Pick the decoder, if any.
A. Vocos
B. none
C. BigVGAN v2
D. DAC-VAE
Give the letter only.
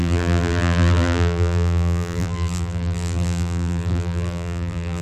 C